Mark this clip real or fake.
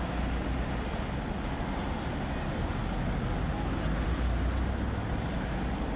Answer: real